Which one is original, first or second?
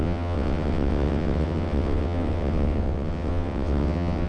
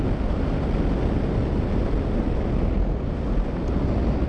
second